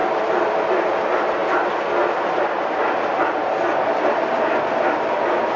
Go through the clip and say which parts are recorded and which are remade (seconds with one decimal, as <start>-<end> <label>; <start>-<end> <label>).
0.0-0.5 remade; 0.5-5.6 recorded